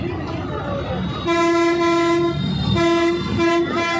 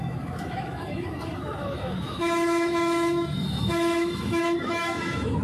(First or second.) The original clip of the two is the first